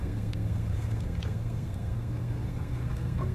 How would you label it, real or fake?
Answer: fake